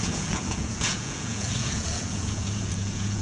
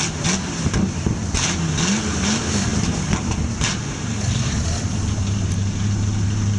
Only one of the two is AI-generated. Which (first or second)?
first